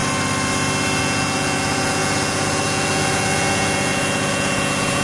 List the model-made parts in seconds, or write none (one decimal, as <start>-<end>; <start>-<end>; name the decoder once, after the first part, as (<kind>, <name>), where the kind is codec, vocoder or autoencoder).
1.0-5.0 (vocoder, Vocos)